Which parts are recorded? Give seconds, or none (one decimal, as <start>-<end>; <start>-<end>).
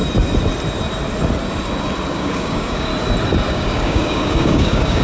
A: 0.0-2.1; 2.9-3.5